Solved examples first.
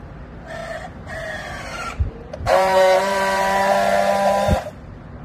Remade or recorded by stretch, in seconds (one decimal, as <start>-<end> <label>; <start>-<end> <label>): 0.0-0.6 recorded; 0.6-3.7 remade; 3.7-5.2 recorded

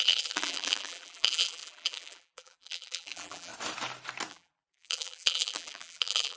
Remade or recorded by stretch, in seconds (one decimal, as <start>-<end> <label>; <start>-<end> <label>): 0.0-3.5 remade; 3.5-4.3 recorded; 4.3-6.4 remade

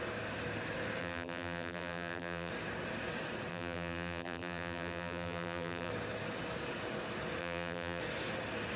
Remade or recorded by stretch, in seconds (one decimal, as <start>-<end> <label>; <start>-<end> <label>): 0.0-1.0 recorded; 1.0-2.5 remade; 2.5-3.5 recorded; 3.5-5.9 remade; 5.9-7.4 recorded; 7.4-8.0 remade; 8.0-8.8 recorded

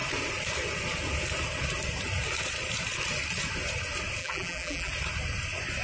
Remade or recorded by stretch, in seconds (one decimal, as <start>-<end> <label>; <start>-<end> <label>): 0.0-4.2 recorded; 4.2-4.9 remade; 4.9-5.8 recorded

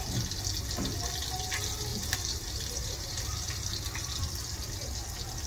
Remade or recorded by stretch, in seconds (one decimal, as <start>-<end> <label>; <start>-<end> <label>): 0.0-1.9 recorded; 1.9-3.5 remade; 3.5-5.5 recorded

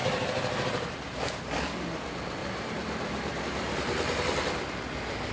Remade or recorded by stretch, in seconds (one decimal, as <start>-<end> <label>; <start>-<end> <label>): 0.0-1.6 remade; 1.6-2.4 recorded; 2.4-3.4 remade; 3.4-5.3 recorded